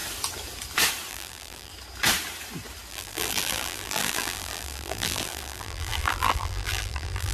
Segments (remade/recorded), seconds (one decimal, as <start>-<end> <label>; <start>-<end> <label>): 0.0-1.1 recorded; 1.1-1.7 remade; 1.7-2.9 recorded; 2.9-7.3 remade